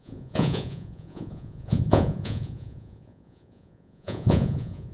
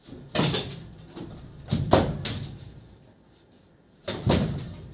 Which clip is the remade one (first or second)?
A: first